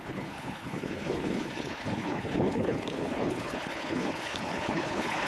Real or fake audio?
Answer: fake